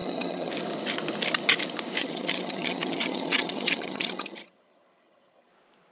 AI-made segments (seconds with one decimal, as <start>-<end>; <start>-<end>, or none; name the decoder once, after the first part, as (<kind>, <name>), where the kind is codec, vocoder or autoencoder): 0.0-0.5 (vocoder, HiFi-GAN); 2.0-5.5